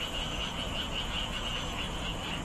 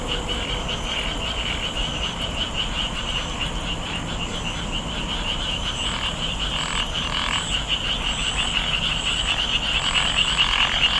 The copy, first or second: first